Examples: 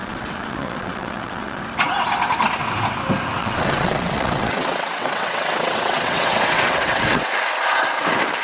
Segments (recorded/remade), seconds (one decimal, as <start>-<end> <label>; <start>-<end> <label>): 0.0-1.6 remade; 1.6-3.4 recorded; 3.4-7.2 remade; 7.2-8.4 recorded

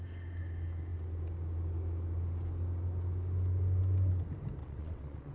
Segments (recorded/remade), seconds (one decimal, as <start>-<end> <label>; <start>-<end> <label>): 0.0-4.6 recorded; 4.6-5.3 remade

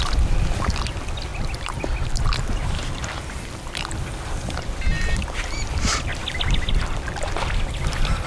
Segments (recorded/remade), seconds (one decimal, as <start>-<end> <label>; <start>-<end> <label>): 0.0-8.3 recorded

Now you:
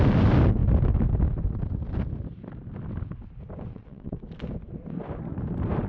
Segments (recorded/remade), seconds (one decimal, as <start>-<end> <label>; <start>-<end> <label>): 0.0-3.7 recorded; 3.7-4.2 remade; 4.2-5.9 recorded

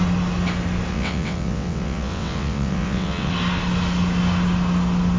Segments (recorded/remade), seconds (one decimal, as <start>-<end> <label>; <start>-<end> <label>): 0.0-0.9 recorded; 0.9-3.3 remade; 3.3-5.2 recorded